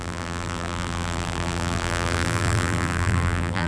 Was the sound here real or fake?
fake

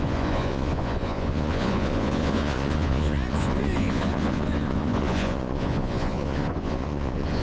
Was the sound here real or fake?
fake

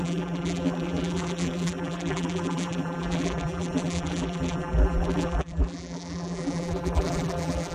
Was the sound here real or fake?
fake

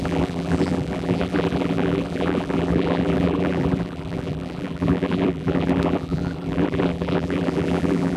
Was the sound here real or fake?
fake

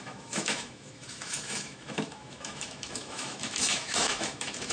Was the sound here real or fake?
fake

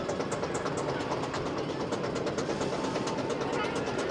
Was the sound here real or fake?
real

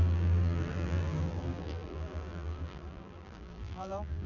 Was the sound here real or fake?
fake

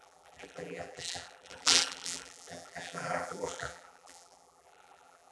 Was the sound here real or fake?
fake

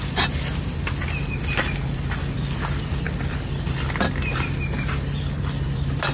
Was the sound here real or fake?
fake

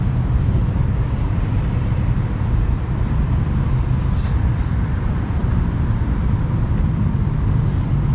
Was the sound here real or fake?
fake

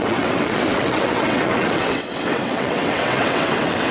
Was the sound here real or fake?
fake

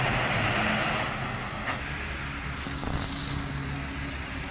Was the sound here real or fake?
real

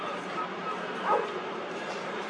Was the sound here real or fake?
fake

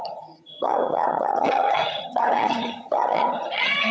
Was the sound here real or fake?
fake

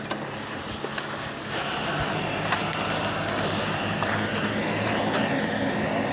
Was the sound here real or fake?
real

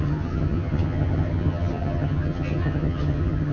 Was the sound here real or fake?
fake